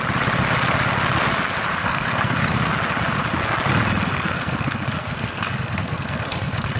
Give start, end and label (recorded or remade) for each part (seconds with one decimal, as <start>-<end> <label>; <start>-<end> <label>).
0.0-1.7 recorded; 1.7-2.7 remade; 2.7-4.1 recorded; 4.1-6.8 remade